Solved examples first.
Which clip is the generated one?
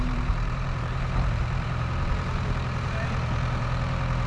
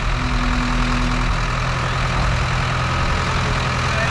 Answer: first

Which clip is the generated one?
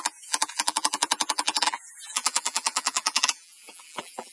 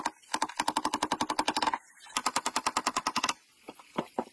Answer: first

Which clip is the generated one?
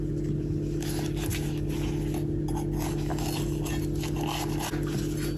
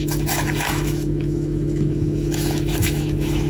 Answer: second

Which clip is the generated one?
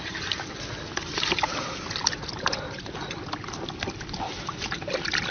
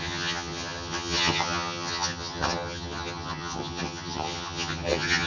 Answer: second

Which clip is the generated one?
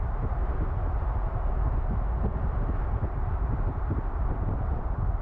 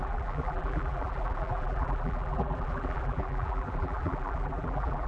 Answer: second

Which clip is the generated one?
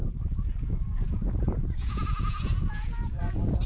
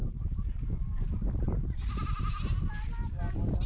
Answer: first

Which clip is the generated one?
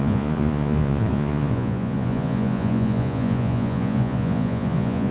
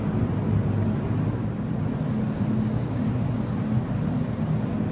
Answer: first